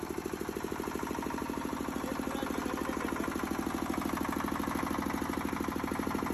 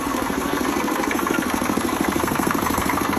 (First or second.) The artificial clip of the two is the second